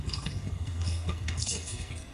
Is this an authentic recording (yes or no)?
no